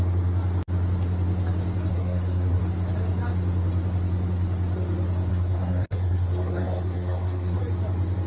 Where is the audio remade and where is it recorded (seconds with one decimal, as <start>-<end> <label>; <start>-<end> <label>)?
0.0-1.9 recorded; 1.9-2.6 remade; 2.6-5.3 recorded; 5.3-7.6 remade; 7.6-8.3 recorded